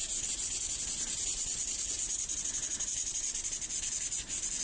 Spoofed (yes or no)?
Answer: no